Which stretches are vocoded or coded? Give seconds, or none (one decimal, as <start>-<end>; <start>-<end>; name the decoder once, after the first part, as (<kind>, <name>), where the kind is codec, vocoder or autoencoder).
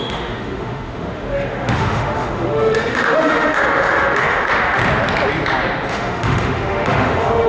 0.0-4.8 (autoencoder, DAC-VAE); 5.9-7.5